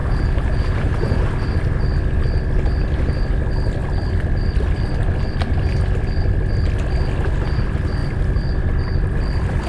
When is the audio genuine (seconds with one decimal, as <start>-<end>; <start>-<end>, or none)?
1.2-9.7